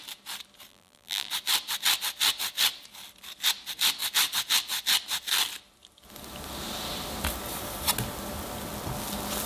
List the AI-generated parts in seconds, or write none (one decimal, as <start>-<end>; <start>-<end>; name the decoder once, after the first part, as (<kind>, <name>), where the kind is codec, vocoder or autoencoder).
0.7-1.3 (vocoder, BigVGAN v2)